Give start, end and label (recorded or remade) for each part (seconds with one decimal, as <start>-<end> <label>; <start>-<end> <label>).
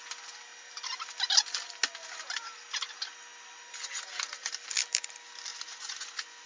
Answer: 0.0-5.5 recorded; 5.5-6.5 remade